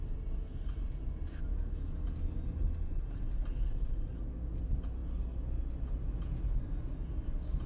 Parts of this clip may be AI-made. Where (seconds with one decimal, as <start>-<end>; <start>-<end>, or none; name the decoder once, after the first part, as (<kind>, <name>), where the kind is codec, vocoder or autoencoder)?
none